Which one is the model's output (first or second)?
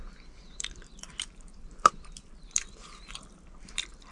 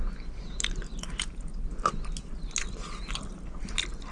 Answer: first